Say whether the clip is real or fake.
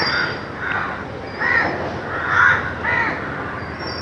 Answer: real